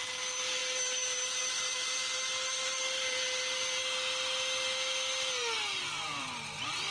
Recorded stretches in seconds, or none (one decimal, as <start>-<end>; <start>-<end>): 3.8-6.2